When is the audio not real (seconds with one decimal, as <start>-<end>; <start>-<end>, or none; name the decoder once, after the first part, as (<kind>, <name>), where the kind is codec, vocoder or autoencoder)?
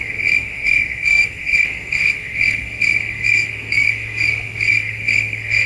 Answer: 0.0-5.7 (codec, SNAC)